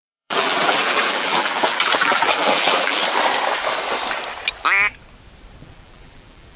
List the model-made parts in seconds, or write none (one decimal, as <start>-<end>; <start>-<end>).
0.0-3.0; 5.6-6.6